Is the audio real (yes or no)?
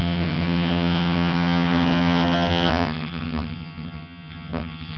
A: no